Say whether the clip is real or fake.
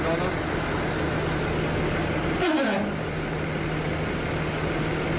real